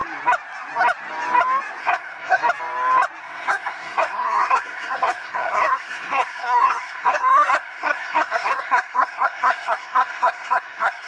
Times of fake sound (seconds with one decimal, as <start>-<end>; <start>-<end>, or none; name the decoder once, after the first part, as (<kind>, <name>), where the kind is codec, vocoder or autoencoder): 1.8-2.4 (codec, SNAC); 3.2-11.1